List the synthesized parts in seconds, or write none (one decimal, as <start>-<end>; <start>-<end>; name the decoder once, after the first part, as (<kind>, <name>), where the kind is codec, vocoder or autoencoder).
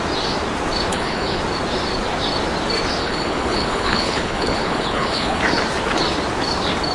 0.9-1.4 (codec, HILCodec); 3.0-5.4